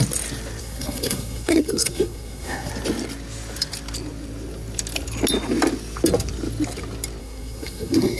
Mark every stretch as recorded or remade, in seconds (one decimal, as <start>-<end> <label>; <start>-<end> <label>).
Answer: 0.0-0.6 recorded; 0.6-2.7 remade; 2.7-7.2 recorded; 7.2-8.2 remade